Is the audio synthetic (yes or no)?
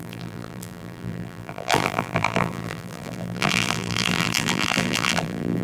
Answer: yes